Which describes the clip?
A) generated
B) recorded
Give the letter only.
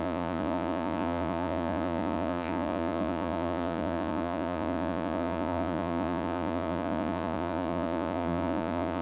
A